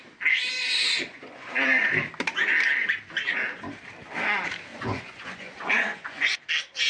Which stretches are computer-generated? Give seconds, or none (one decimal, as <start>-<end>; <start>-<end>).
1.1-1.9; 4.7-6.5